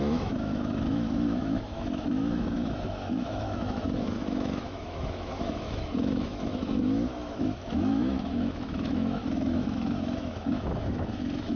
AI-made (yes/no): yes